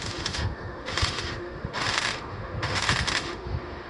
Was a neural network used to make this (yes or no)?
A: yes